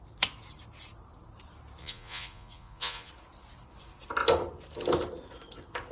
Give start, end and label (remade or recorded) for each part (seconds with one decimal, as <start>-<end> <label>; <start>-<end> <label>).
0.0-1.8 recorded; 1.8-3.1 remade; 3.1-5.9 recorded

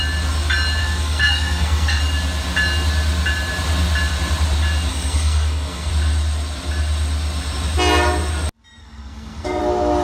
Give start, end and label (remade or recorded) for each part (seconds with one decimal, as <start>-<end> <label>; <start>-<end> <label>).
0.0-0.8 recorded; 0.8-2.0 remade; 2.0-4.9 recorded; 4.9-5.9 remade; 5.9-8.8 recorded; 8.8-9.6 remade; 9.6-10.0 recorded

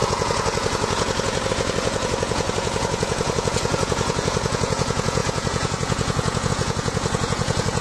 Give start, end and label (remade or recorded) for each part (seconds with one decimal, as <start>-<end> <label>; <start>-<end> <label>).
0.0-7.8 remade

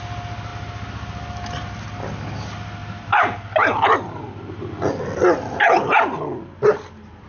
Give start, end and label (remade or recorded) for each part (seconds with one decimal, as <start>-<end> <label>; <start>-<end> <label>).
0.0-7.3 recorded

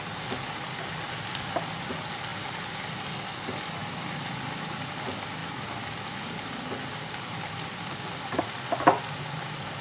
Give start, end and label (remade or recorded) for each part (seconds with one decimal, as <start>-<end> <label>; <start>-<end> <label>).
0.0-2.3 recorded; 2.3-3.2 remade; 3.2-3.8 recorded; 3.8-4.6 remade; 4.6-5.4 recorded; 5.4-8.4 remade; 8.4-9.8 recorded

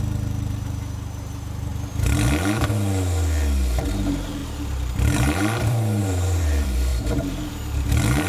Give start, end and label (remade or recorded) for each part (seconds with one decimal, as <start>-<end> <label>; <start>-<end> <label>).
0.0-1.7 remade; 1.7-3.8 recorded; 3.8-8.3 remade

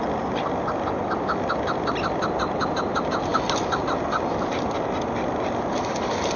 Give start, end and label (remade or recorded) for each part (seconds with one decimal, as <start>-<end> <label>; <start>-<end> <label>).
0.0-6.4 recorded